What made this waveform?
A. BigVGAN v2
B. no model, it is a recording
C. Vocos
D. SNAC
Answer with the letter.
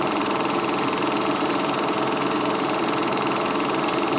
A